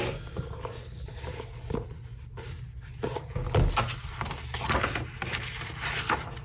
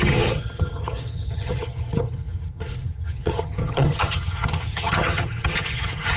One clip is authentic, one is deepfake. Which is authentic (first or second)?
first